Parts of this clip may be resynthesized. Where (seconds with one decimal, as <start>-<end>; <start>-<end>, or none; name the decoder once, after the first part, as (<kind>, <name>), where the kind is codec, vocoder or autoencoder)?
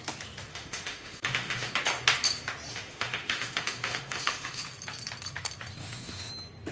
0.5-1.7 (autoencoder, DAC-VAE); 2.7-4.6; 5.8-6.3